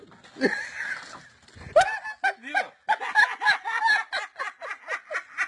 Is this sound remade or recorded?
recorded